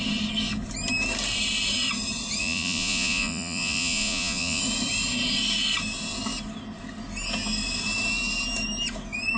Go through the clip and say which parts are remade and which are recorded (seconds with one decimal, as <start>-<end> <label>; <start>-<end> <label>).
0.0-2.4 recorded; 2.4-4.6 remade; 4.6-9.4 recorded